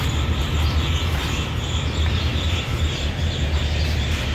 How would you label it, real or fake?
real